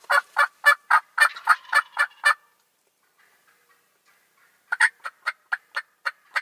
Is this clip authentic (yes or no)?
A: yes